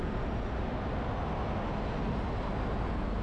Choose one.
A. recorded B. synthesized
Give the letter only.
A